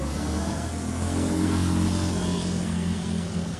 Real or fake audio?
fake